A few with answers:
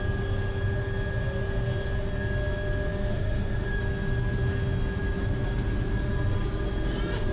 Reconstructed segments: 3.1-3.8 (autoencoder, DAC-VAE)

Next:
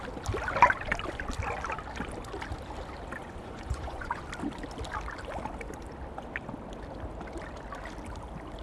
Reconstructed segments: 3.2-4.2 (vocoder, Vocos)

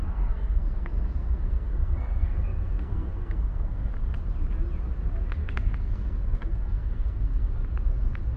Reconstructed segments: 0.0-3.9 (codec, SNAC); 5.4-7.5

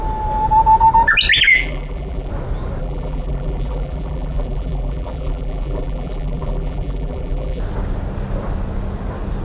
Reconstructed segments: 1.5-2.3 (vocoder, BigVGAN v2); 2.8-7.6

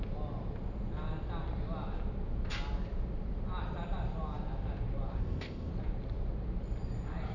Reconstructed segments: 5.2-5.7 (codec, ZipCodec)